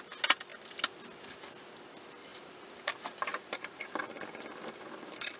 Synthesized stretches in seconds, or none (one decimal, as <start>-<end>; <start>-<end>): 2.3-2.9; 3.3-4.0

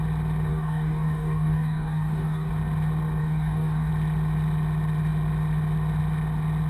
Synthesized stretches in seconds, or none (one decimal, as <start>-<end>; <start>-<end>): 0.5-2.5; 3.2-3.9

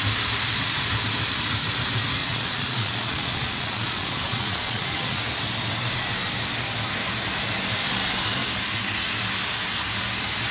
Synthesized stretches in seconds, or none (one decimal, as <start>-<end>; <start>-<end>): 2.2-5.2

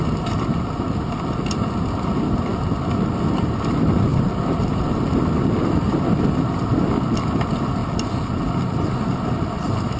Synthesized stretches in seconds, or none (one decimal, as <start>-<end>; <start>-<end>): none

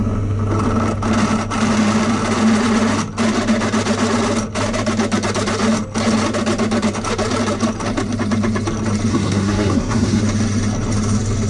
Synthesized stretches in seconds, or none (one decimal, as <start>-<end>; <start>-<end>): 9.1-10.2

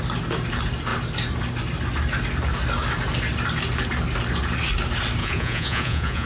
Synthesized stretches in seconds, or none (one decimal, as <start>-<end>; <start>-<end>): 5.2-6.3

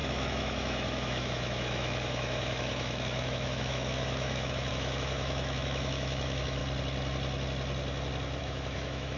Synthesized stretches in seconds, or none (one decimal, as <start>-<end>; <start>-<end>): 0.0-6.6; 8.4-9.2